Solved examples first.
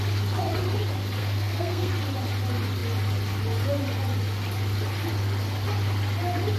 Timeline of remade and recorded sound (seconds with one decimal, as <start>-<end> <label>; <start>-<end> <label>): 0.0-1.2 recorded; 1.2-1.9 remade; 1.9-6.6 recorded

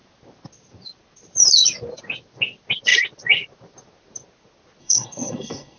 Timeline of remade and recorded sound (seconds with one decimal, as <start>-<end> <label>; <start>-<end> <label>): 0.0-4.8 recorded; 4.8-5.8 remade

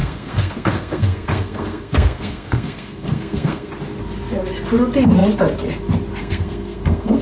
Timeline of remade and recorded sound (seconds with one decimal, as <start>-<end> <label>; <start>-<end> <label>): 0.0-3.7 remade; 3.7-6.2 recorded; 6.2-7.2 remade

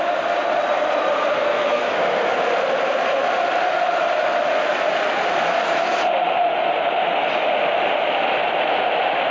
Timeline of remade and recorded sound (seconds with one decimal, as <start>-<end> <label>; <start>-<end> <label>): 0.0-1.3 recorded; 1.3-2.3 remade; 2.3-9.3 recorded

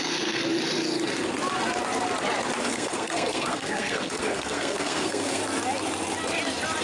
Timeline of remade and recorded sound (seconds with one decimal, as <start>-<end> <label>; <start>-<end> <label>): 0.0-0.4 remade; 0.4-2.6 recorded; 2.6-5.4 remade; 5.4-6.8 recorded

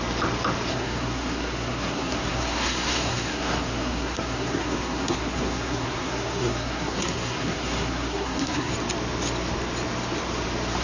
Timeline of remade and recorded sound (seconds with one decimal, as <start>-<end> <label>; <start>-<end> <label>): 0.0-0.7 recorded; 0.7-8.7 remade; 8.7-10.8 recorded

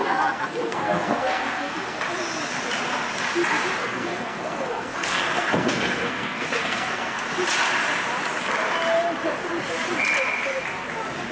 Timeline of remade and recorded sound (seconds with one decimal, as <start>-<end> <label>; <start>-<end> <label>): 0.0-2.0 remade; 2.0-3.8 recorded; 3.8-7.2 remade; 7.2-11.3 recorded

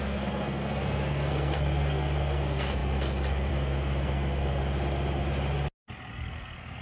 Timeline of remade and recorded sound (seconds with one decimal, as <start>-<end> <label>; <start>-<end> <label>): 0.0-4.6 remade; 4.6-6.1 recorded; 6.1-6.8 remade